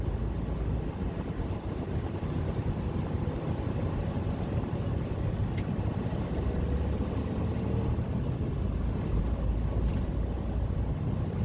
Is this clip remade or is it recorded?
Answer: recorded